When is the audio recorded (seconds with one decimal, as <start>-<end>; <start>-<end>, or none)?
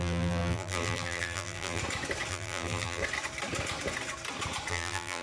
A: 1.8-2.3; 3.0-4.7